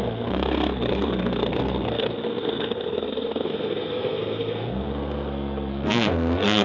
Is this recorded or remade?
remade